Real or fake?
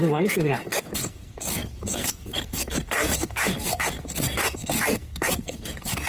fake